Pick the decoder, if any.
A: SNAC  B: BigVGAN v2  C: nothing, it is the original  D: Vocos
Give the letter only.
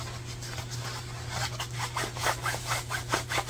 C